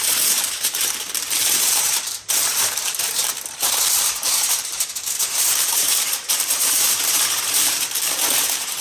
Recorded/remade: remade